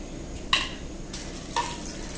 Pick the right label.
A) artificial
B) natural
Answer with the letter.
B